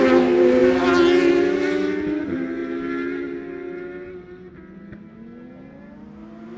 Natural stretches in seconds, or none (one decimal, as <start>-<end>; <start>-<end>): 0.0-6.6